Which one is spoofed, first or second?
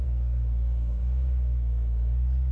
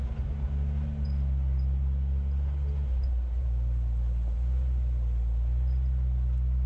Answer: first